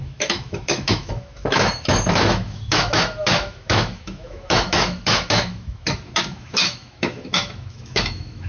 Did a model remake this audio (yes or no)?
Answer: yes